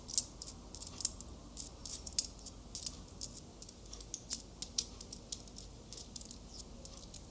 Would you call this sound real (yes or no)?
yes